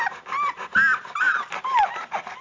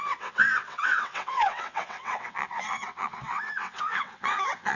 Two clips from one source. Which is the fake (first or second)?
second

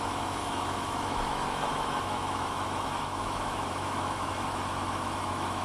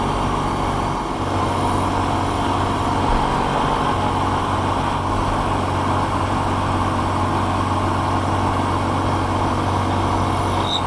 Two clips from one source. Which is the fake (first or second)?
first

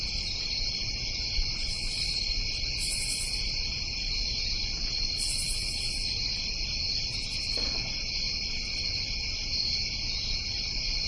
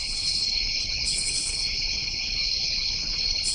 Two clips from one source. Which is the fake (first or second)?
second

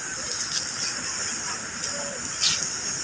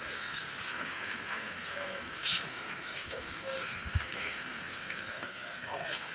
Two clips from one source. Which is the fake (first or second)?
second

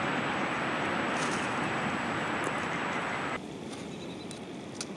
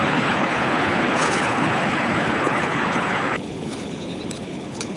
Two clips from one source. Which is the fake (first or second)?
second